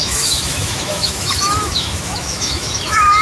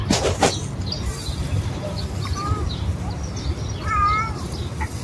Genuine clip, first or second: second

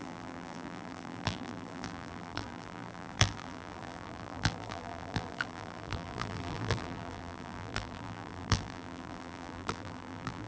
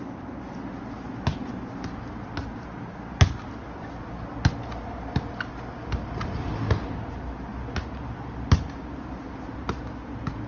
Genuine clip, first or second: second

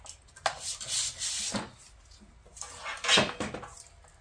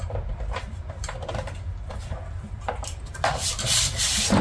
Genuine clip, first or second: first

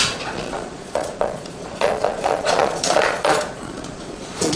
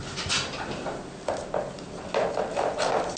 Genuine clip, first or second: second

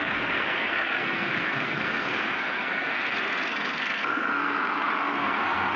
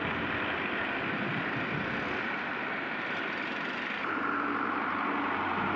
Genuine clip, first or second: second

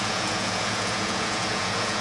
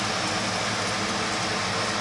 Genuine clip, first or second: second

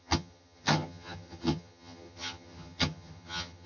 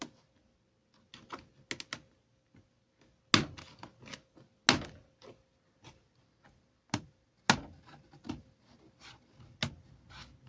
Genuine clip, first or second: second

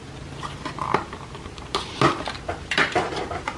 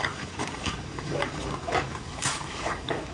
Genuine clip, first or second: first